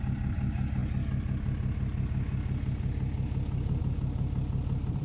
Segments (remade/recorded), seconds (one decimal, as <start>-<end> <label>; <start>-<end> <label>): 0.0-5.0 recorded